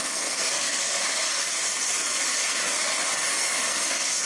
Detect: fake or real fake